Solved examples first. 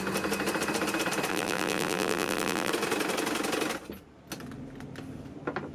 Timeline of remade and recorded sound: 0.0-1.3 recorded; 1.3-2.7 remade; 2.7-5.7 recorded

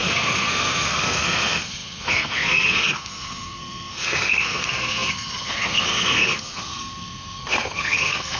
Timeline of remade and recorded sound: 0.0-8.4 remade